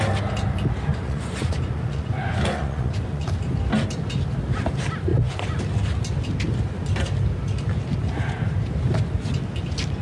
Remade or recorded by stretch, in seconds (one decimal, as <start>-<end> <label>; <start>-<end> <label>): 0.0-0.9 recorded; 0.9-3.3 remade; 3.3-5.1 recorded; 5.1-5.6 remade; 5.6-10.0 recorded